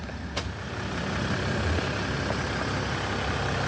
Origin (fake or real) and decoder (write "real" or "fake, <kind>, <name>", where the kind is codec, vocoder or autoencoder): real